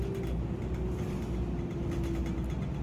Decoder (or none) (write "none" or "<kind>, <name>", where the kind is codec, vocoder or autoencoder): none